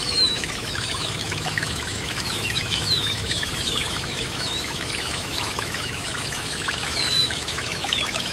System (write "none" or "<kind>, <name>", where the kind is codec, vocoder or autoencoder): autoencoder, DAC-VAE